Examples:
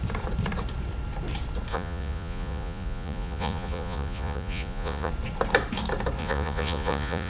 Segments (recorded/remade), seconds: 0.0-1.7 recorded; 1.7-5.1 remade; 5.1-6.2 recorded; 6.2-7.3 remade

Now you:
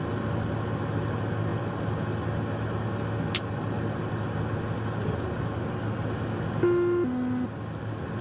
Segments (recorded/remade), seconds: 0.0-8.2 recorded

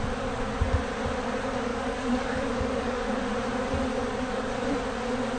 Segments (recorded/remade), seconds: 0.0-1.7 recorded; 1.7-3.2 remade; 3.2-3.9 recorded; 3.9-4.5 remade; 4.5-5.4 recorded

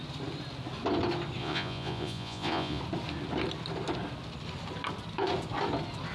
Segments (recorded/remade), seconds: 0.0-1.4 recorded; 1.4-2.8 remade; 2.8-6.1 recorded

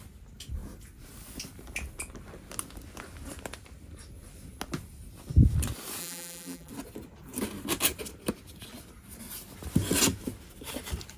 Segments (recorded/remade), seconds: 0.0-6.0 recorded; 6.0-6.7 remade; 6.7-11.2 recorded

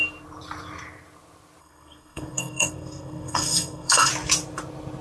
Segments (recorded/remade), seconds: 0.0-1.6 recorded; 1.6-4.1 remade; 4.1-5.0 recorded

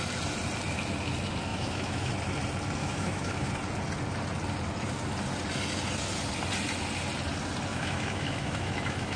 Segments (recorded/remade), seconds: 0.0-1.5 recorded; 1.5-2.1 remade; 2.1-2.8 recorded; 2.8-3.5 remade; 3.5-7.7 recorded; 7.7-9.2 remade